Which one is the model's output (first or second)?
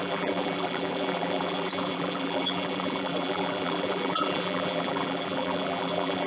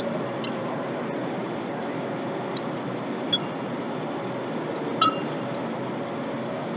first